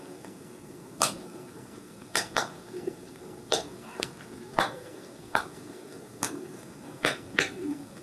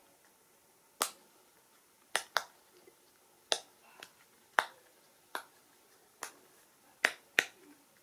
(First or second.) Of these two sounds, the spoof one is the first